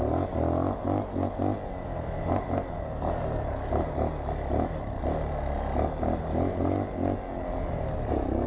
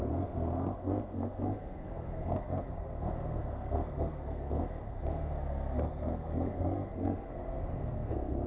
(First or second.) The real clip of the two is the first